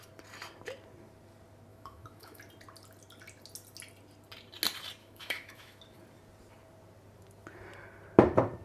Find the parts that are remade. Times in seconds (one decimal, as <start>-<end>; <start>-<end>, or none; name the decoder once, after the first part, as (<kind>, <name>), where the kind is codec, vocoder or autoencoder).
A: 1.7-2.4 (autoencoder, DAC-VAE); 5.0-5.8